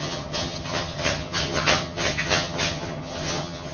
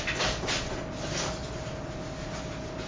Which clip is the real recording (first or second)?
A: second